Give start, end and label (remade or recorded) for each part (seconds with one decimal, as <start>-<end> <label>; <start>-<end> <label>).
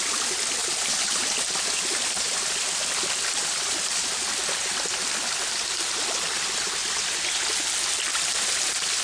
0.0-9.0 recorded